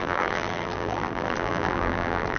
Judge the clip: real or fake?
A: fake